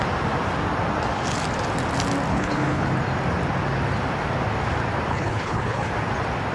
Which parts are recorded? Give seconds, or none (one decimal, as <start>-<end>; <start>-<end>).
0.0-2.3; 2.9-5.1; 5.9-6.5